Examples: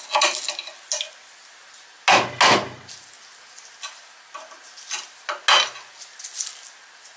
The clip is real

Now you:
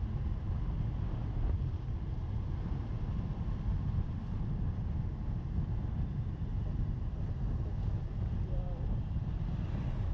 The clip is real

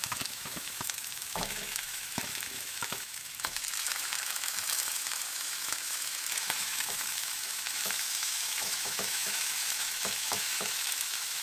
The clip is fake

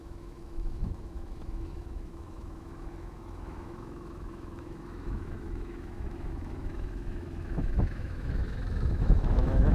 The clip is fake